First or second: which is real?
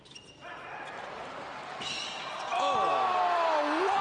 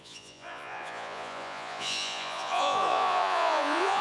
first